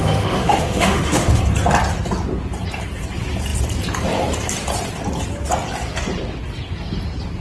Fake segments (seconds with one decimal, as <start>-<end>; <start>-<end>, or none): 0.0-1.4